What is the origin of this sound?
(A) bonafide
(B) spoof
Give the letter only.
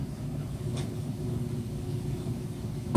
B